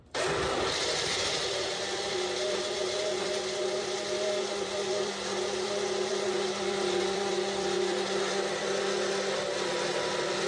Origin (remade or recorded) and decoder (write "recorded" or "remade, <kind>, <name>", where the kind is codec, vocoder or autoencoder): remade, vocoder, BigVGAN v2